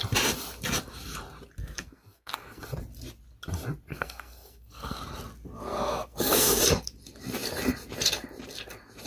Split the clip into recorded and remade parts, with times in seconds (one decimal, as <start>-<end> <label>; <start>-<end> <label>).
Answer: 0.0-1.6 recorded; 1.6-2.6 remade; 2.6-3.9 recorded; 3.9-5.0 remade; 5.0-5.5 recorded; 5.5-6.6 remade; 6.6-9.1 recorded